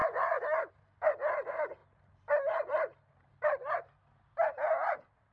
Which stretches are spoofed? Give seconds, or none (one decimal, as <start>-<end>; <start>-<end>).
1.8-3.7